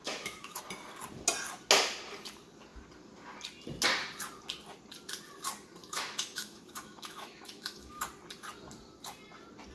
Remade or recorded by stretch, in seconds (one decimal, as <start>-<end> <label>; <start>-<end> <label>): 0.0-0.6 remade; 0.6-5.8 recorded; 5.8-8.0 remade; 8.0-9.7 recorded